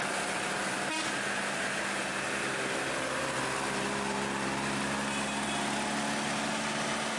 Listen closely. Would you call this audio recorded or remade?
recorded